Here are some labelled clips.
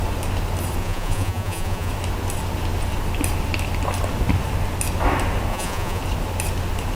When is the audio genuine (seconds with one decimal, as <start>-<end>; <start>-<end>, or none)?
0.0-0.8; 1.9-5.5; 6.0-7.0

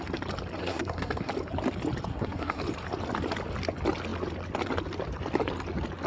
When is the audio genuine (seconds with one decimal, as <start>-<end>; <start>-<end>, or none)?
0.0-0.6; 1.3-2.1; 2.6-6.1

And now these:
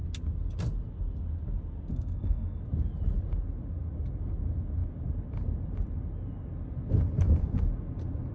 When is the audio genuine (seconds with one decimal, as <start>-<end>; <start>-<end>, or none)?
0.0-1.9; 2.6-8.3